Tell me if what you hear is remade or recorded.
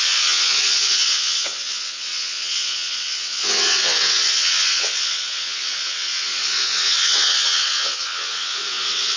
remade